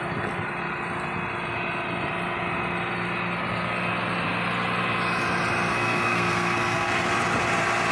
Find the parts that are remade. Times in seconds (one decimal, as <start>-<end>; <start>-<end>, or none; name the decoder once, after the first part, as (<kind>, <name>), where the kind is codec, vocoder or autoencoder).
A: 5.7-7.1 (codec, SNAC)